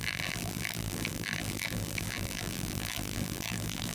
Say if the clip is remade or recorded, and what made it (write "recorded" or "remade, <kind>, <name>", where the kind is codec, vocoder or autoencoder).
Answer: remade, vocoder, BigVGAN v2